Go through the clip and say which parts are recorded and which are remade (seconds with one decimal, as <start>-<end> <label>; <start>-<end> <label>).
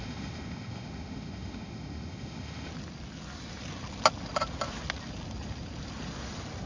0.0-2.7 remade; 2.7-6.7 recorded